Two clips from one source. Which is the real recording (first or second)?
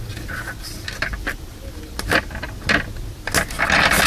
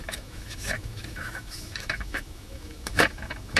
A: first